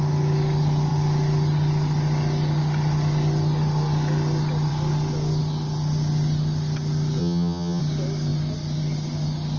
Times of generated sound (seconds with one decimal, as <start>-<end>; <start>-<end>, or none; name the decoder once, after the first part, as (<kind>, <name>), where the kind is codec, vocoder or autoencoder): 7.2-7.8 (vocoder, HiFi-GAN)